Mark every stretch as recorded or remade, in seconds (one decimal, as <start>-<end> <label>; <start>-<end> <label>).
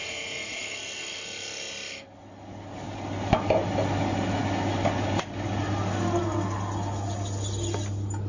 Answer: 0.0-0.6 remade; 0.6-8.3 recorded